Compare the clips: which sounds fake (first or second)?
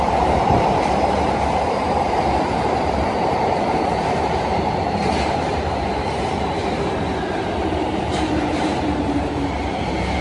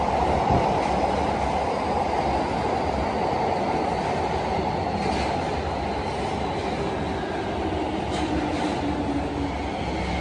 first